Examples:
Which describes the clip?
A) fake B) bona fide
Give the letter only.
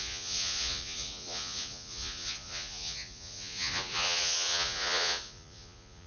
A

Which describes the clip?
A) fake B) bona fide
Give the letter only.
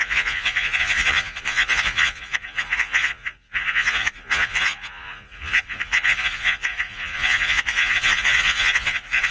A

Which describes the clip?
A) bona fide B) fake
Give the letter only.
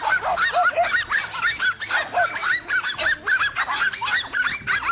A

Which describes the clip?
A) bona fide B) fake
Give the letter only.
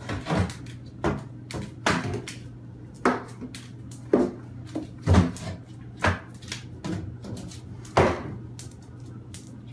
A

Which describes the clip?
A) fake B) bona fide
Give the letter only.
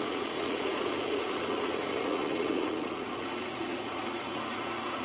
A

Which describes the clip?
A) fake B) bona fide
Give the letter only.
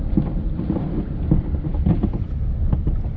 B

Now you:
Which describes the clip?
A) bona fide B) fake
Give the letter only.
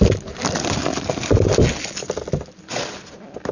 A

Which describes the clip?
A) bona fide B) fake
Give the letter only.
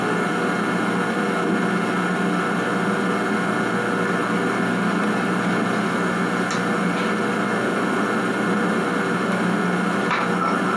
A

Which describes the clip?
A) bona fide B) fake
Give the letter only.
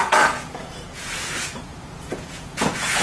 B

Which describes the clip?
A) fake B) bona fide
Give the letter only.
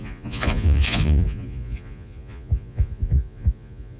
A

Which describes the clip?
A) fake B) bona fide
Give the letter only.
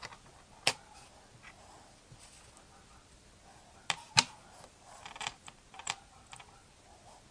B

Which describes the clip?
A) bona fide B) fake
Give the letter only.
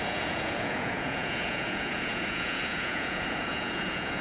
B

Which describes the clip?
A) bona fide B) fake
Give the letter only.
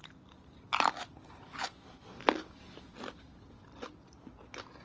A